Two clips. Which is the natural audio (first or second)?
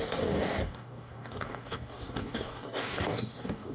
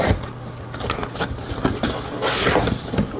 second